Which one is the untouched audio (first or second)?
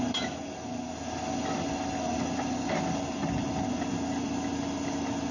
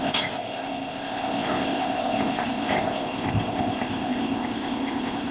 first